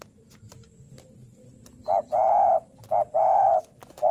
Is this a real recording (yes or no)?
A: no